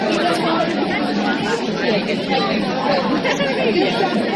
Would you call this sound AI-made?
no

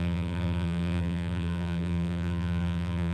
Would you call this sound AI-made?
yes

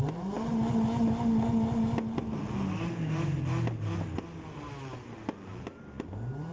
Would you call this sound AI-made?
no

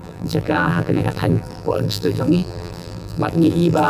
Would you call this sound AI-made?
yes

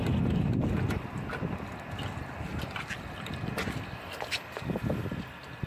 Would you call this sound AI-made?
no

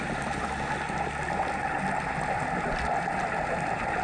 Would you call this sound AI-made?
no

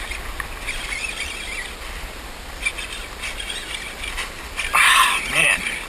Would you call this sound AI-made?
no